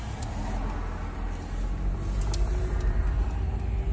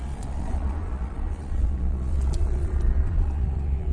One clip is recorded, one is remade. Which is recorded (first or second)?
first